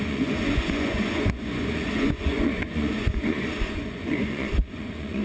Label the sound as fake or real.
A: fake